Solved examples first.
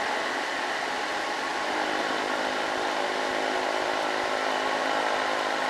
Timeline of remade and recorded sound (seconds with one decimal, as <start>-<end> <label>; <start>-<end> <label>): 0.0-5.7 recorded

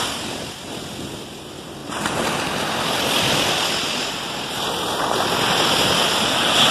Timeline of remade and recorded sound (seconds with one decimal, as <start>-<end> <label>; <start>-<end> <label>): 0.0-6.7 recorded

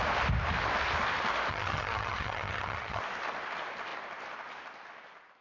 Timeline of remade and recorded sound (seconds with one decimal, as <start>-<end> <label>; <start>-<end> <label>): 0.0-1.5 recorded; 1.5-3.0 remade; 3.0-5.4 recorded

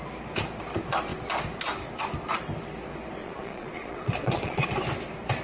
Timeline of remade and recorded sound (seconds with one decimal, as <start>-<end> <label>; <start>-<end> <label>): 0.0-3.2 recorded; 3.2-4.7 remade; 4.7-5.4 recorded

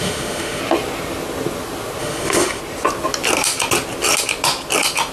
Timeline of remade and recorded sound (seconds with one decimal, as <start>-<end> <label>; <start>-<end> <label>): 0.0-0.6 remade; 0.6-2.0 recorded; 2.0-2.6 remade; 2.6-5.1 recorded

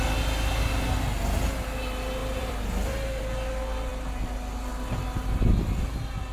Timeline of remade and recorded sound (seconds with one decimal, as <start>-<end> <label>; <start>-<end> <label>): 0.0-2.2 recorded; 2.2-3.2 remade; 3.2-6.3 recorded

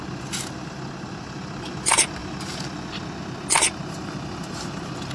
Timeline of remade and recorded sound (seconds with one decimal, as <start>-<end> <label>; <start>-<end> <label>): 0.0-5.1 recorded